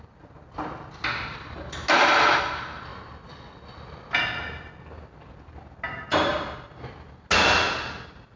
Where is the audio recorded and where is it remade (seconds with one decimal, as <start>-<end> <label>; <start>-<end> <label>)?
0.0-8.4 recorded